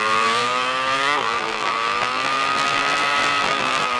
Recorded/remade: remade